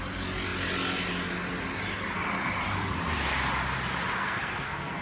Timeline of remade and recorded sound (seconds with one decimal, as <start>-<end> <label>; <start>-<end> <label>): 0.0-4.2 recorded; 4.2-5.0 remade